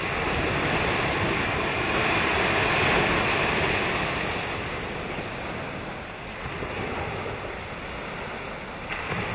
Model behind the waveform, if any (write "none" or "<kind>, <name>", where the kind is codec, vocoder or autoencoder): none